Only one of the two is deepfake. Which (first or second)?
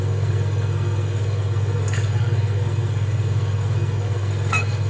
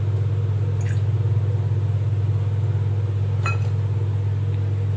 first